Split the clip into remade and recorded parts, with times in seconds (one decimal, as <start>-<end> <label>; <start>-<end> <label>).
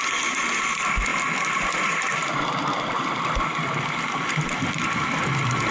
0.0-1.1 recorded; 1.1-3.4 remade; 3.4-5.7 recorded